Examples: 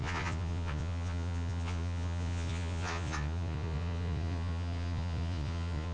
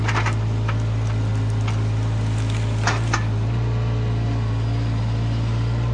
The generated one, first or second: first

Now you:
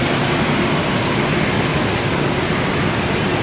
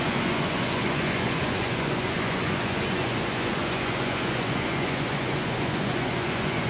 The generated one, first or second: second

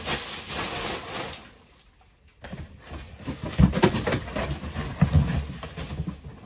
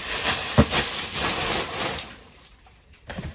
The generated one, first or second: second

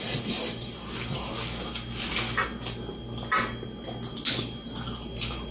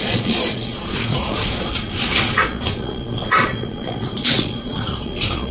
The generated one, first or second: second